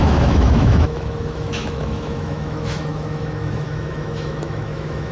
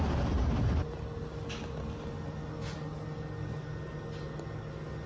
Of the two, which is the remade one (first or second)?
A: first